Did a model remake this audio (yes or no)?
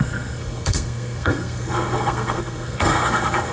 yes